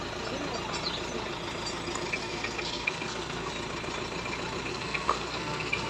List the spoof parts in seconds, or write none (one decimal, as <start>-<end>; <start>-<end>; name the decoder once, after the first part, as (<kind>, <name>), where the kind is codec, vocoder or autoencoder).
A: 2.2-3.5 (codec, SNAC); 4.7-5.9